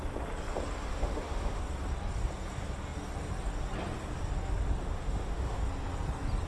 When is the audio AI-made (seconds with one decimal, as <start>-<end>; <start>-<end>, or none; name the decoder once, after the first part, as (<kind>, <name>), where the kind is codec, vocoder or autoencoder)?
0.9-1.6 (autoencoder, DAC-VAE); 4.8-5.6